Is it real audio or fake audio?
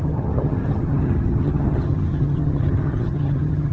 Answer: fake